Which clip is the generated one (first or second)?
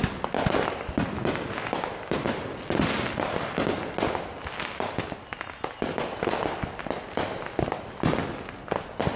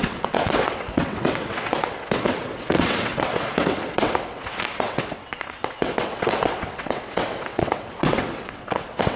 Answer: second